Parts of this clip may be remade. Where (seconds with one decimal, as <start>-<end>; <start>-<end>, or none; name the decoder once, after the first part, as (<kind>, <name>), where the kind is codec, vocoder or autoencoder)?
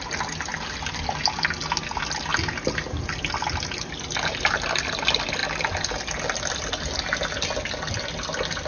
none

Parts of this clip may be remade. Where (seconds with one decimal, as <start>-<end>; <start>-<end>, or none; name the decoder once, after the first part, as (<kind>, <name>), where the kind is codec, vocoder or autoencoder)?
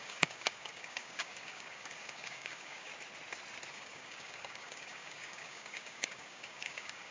0.0-2.9 (codec, DAC); 3.7-7.1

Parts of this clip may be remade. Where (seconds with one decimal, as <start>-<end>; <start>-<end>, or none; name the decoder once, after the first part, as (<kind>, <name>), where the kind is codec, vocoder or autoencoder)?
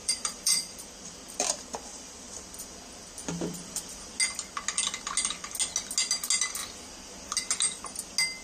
0.0-1.5 (vocoder, BigVGAN v2); 1.9-2.4; 3.2-4.2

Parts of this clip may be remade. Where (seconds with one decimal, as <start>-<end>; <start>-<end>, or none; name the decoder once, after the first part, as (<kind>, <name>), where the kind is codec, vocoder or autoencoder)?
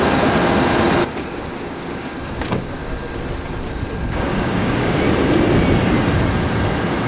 1.0-2.7 (codec, DAC); 4.0-5.0